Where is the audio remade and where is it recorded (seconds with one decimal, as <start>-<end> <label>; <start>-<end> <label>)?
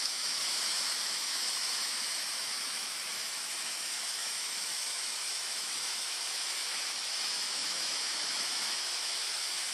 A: 0.0-9.7 remade